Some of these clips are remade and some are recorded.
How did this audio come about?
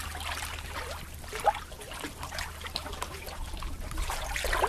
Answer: recorded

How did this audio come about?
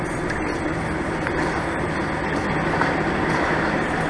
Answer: recorded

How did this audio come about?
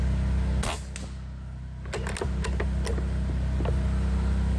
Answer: recorded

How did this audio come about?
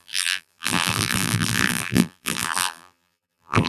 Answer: remade